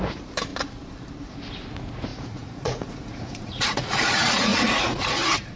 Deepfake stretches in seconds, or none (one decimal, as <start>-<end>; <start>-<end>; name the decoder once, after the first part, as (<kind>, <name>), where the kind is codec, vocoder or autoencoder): 0.0-0.5 (vocoder, Vocos); 1.7-5.6